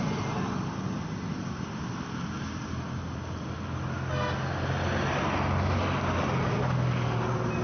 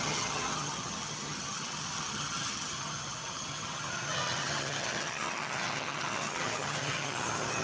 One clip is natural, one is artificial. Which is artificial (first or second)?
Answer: second